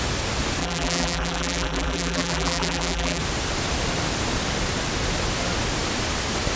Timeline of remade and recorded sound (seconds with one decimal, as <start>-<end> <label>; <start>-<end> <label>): 0.0-0.6 recorded; 0.6-3.2 remade; 3.2-6.6 recorded